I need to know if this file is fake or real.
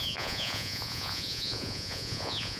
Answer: fake